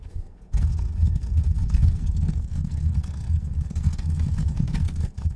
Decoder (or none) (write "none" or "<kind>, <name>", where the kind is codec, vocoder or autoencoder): codec, SNAC